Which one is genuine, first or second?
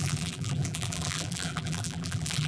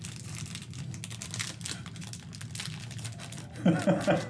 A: second